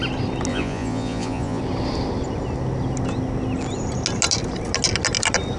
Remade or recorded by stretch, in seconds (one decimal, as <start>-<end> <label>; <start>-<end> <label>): 0.0-0.5 recorded; 0.5-1.6 remade; 1.6-5.6 recorded